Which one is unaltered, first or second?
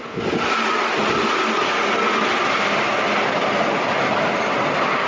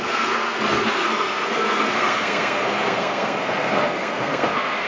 first